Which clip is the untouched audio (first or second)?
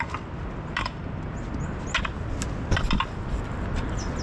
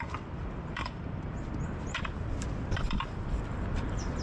first